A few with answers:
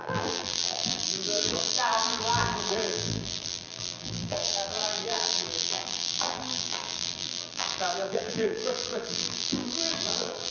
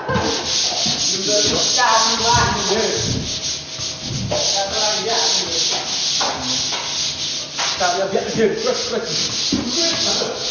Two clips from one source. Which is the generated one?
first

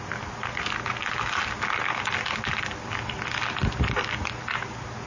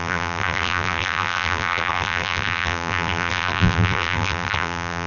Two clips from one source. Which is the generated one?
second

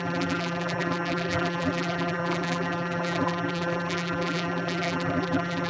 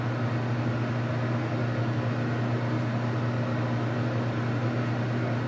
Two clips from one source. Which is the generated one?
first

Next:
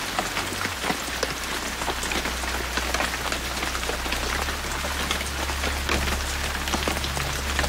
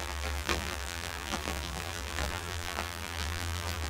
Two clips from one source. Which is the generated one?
second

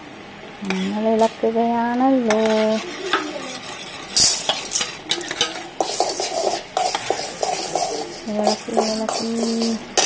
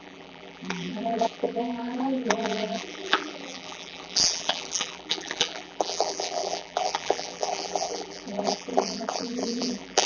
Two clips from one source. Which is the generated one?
second